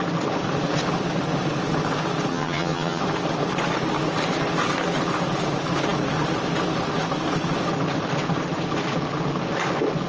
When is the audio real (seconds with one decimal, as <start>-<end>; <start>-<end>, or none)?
0.0-2.3; 3.0-10.1